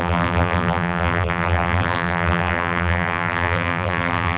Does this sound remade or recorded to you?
remade